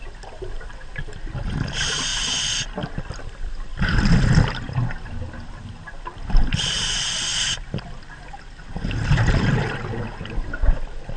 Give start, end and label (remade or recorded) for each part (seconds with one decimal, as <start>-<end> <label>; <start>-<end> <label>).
0.0-11.2 recorded